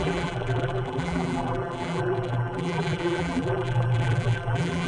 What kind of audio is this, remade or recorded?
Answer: remade